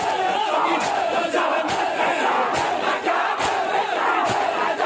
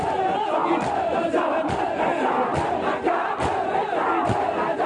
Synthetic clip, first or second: first